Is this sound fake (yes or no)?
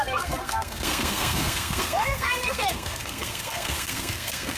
yes